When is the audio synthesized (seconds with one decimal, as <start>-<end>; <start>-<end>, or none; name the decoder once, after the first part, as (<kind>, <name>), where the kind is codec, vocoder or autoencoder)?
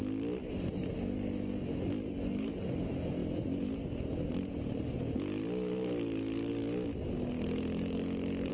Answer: none